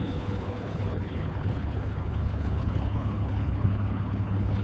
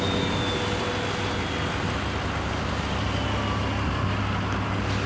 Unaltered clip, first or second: second